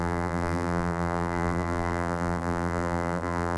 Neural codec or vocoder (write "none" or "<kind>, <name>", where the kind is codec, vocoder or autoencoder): vocoder, BigVGAN v2